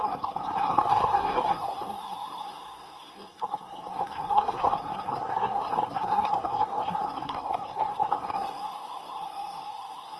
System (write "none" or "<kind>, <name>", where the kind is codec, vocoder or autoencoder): codec, SNAC